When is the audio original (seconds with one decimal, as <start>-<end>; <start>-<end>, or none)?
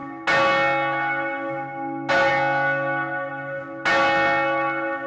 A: 0.0-5.1